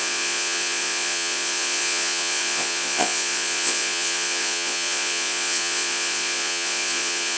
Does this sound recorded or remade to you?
remade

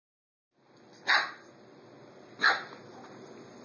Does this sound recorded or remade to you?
recorded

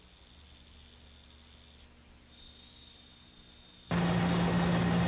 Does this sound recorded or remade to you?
recorded